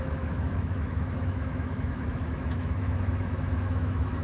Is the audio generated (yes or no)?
yes